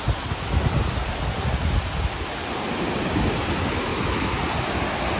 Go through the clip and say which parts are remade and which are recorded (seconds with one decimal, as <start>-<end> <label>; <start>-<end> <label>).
0.0-3.9 recorded; 3.9-4.4 remade; 4.4-5.2 recorded